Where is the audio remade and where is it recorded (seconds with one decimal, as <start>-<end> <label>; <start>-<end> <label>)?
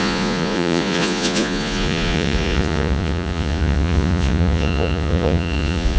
0.0-6.0 remade